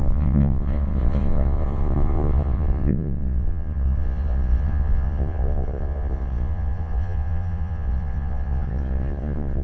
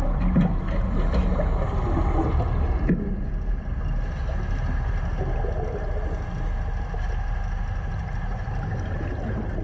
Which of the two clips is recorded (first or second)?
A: second